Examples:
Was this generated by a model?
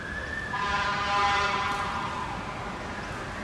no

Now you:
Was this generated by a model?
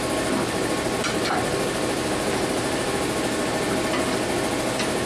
no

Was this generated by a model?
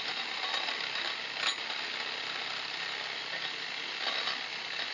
no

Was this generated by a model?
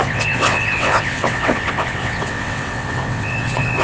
yes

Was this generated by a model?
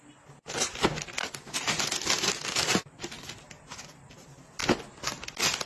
no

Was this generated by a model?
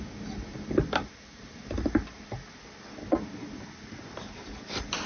no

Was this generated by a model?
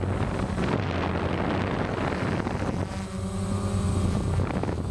no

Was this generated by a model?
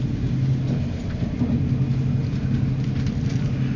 no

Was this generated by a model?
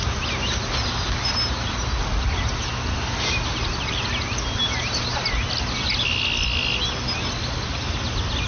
no